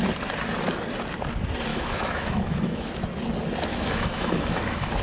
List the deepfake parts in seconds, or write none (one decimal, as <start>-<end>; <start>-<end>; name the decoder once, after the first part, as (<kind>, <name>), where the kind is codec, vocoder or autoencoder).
1.7-2.9 (autoencoder, DAC-VAE); 3.7-5.0